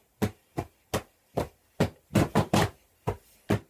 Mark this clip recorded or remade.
recorded